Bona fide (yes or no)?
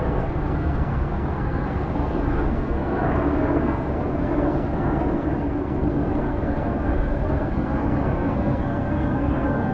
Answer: no